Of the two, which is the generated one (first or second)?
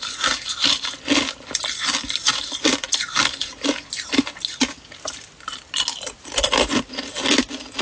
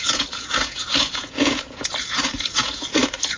second